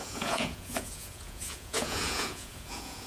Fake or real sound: fake